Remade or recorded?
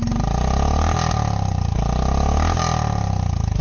recorded